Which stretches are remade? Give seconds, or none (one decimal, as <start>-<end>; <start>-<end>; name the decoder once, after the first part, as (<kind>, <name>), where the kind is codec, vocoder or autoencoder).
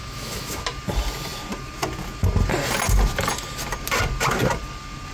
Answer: 0.0-0.6 (autoencoder, DAC-VAE)